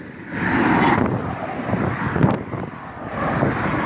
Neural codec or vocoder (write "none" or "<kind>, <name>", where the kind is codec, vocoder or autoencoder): none